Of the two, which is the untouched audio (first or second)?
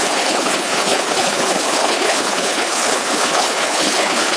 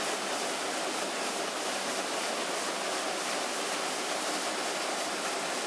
second